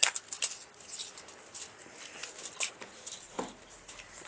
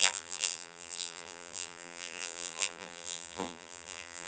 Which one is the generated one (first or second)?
second